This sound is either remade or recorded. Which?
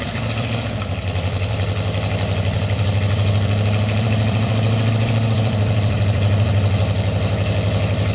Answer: remade